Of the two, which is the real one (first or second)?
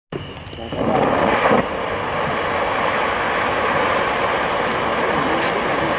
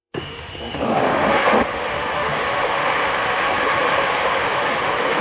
first